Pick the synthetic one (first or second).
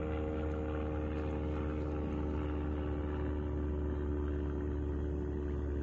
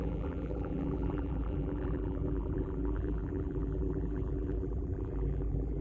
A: second